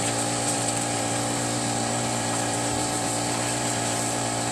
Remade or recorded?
remade